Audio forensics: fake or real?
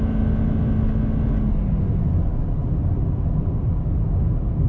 real